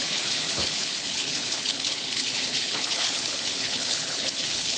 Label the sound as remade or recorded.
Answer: remade